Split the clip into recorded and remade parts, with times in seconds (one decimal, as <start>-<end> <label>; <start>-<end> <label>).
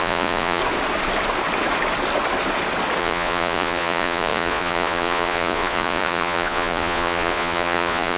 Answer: 0.0-0.6 remade; 0.6-3.0 recorded; 3.0-8.2 remade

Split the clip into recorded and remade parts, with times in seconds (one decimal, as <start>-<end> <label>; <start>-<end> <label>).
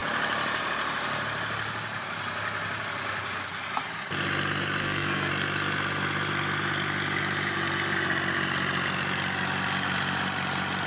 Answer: 0.0-4.8 recorded; 4.8-5.3 remade; 5.3-10.9 recorded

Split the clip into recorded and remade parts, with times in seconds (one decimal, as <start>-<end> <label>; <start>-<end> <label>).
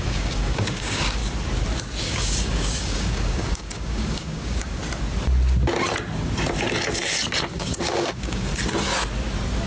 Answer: 0.0-1.2 remade; 1.2-2.0 recorded; 2.0-4.8 remade; 4.8-7.5 recorded; 7.5-8.5 remade; 8.5-9.7 recorded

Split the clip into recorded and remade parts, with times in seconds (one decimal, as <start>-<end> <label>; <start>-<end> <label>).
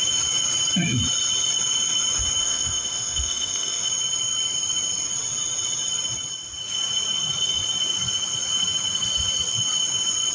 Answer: 0.0-2.4 recorded; 2.4-3.9 remade; 3.9-10.3 recorded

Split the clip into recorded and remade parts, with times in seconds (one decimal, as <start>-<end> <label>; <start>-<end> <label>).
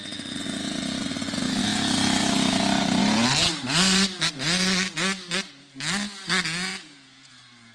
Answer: 0.0-6.7 recorded; 6.7-7.3 remade; 7.3-7.7 recorded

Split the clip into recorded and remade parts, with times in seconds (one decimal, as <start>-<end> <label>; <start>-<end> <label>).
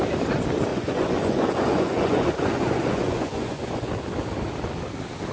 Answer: 0.0-0.7 recorded; 0.7-3.9 remade; 3.9-5.3 recorded